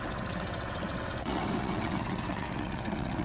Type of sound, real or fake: fake